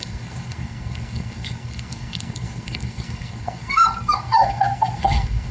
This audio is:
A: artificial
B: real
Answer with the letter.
A